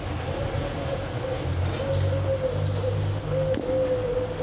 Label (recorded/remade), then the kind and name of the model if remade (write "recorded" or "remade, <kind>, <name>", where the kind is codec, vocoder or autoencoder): recorded